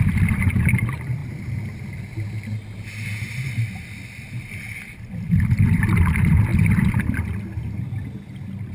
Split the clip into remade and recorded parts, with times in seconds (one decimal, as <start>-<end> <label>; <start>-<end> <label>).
0.0-8.7 recorded